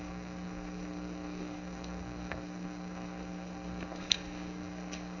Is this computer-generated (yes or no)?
yes